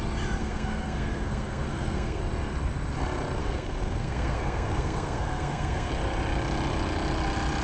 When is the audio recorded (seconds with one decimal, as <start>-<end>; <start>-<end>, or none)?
0.0-0.4; 2.2-3.4; 5.9-7.6